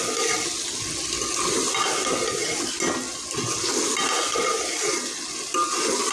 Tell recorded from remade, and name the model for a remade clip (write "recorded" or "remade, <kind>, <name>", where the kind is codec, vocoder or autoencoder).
recorded